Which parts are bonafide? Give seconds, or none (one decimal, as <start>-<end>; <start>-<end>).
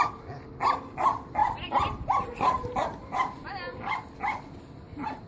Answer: 0.0-5.3